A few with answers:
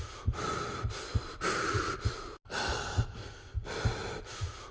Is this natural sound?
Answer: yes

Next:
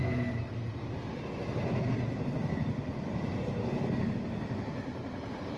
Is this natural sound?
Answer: yes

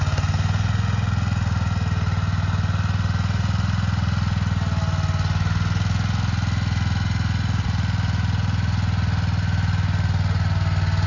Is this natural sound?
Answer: yes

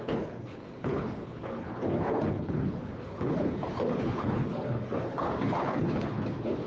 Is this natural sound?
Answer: no